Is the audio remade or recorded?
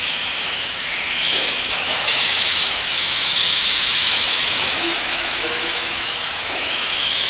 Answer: remade